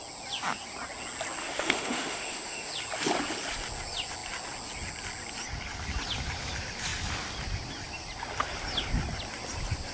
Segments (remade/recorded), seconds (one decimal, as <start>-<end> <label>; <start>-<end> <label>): 0.0-1.4 recorded; 1.4-2.7 remade; 2.7-9.9 recorded